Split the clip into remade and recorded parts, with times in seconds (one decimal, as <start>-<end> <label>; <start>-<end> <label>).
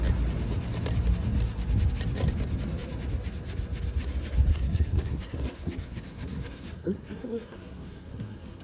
0.0-4.5 recorded; 4.5-8.6 remade